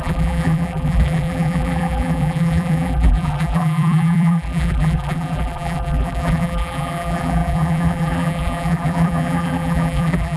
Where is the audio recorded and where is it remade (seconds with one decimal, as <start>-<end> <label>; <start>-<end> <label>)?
0.0-10.4 remade